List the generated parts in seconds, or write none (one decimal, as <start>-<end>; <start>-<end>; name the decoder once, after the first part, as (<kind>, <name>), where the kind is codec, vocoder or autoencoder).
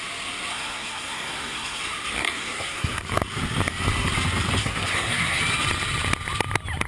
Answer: 0.5-1.8 (codec, SNAC); 2.2-3.0; 4.6-5.4